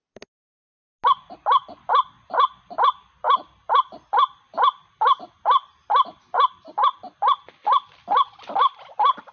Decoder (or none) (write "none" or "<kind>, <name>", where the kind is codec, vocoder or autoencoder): none